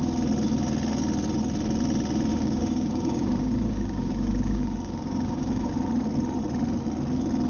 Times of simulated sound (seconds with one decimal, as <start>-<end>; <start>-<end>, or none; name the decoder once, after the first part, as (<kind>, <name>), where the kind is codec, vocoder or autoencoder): 2.3-5.7 (codec, DAC)